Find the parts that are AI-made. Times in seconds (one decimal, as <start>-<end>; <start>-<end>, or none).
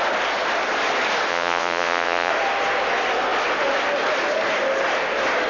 1.3-2.3